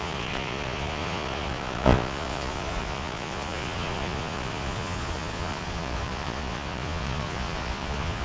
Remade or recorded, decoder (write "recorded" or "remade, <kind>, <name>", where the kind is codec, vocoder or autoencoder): remade, vocoder, Vocos